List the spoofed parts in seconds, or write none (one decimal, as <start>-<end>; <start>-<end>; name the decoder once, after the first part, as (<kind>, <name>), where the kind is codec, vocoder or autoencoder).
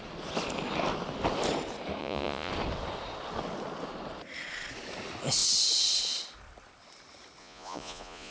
2.0-2.5 (vocoder, Vocos); 7.4-8.3